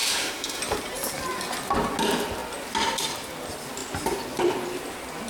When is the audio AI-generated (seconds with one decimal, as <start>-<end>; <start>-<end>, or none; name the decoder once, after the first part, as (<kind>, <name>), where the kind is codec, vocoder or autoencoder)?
0.0-0.6 (autoencoder, DAC-VAE)